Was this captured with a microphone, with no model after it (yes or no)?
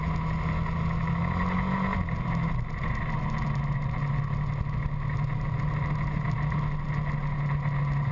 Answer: yes